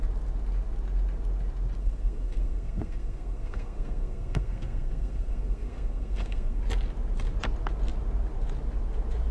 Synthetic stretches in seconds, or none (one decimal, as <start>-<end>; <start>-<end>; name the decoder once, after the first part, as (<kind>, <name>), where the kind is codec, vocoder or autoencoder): 1.8-6.6 (codec, SNAC)